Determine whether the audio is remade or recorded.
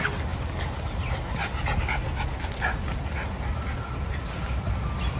recorded